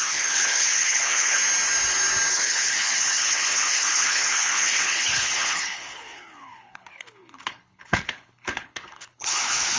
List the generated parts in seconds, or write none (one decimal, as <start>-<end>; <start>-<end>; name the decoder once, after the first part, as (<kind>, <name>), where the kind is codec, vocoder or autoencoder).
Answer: 0.0-1.4 (codec, HILCodec); 2.3-9.8